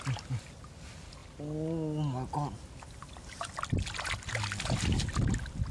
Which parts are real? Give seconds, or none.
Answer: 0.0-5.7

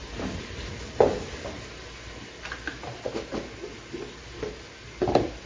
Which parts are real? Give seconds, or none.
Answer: 0.0-5.5

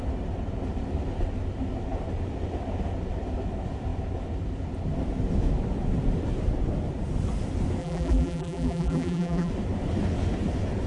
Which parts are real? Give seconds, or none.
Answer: 0.0-7.8; 9.5-10.9

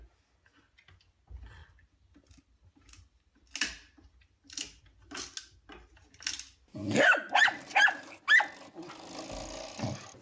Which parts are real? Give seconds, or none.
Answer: 0.0-6.8; 8.1-10.2

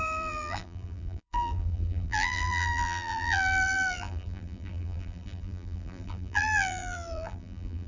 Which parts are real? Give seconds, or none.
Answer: none